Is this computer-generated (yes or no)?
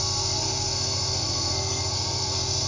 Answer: yes